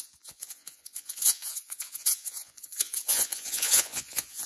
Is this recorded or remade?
remade